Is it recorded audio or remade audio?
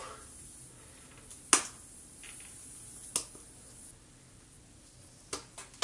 recorded